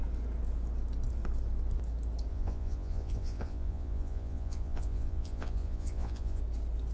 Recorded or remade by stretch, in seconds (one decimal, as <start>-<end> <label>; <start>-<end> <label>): 0.0-2.3 recorded; 2.3-6.4 remade; 6.4-6.9 recorded